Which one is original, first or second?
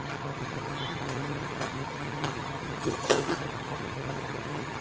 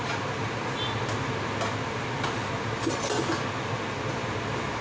second